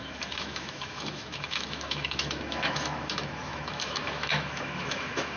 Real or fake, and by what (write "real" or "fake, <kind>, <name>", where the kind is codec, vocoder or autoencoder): fake, autoencoder, DAC-VAE